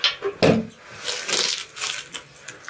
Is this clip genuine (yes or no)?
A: yes